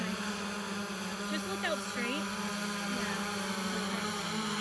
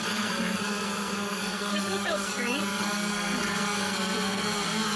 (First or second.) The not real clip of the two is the second